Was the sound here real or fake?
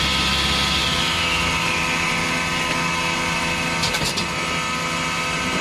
real